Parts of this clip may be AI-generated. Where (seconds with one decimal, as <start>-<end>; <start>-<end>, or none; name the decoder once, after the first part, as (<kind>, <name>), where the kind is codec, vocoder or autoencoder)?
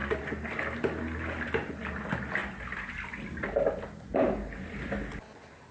none